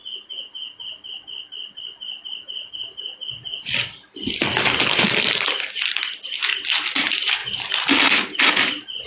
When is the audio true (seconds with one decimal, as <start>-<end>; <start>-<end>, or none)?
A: 0.0-9.1